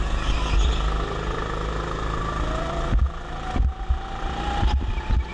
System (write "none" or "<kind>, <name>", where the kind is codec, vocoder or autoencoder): none